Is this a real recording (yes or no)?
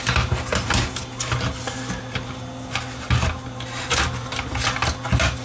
yes